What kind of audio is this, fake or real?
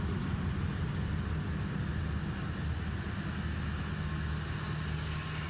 real